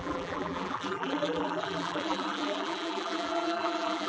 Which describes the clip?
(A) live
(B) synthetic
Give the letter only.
B